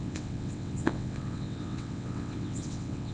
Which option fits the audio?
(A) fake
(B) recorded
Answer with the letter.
A